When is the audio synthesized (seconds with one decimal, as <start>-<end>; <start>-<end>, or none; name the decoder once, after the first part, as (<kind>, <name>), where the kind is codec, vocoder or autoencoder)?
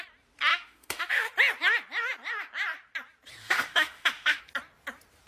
0.5-1.3 (autoencoder, DAC-VAE); 3.4-4.4